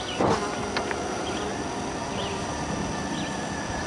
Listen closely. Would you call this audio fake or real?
real